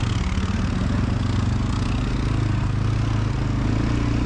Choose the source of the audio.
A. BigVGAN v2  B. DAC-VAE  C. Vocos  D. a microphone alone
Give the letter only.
D